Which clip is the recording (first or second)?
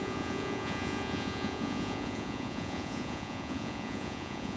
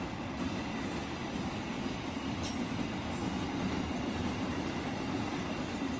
second